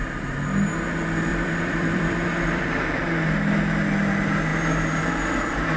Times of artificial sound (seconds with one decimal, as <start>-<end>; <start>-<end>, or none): 1.3-2.8